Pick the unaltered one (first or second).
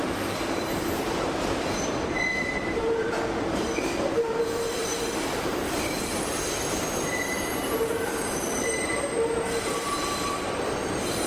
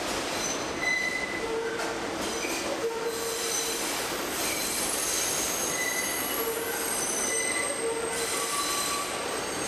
second